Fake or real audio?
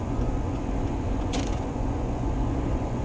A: fake